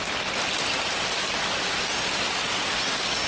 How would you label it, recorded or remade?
recorded